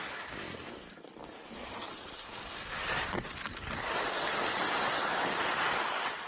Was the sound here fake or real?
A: real